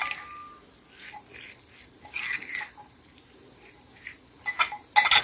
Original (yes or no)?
yes